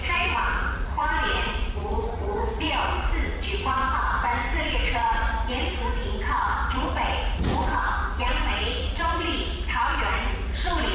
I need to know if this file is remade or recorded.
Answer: remade